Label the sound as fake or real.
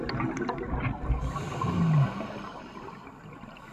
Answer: real